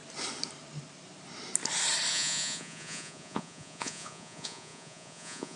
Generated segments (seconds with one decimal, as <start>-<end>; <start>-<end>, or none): 2.1-5.6